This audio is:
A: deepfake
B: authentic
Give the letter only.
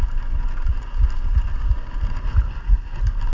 B